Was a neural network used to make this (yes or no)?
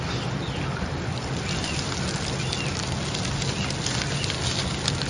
no